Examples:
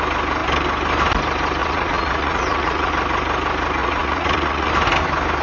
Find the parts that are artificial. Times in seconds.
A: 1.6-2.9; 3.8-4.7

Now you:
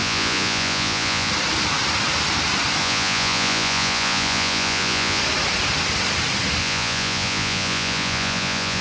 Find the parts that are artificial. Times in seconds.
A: 0.0-1.3; 2.8-5.2; 6.6-8.8